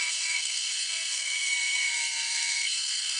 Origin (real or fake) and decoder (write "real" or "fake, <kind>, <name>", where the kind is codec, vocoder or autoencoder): fake, codec, SNAC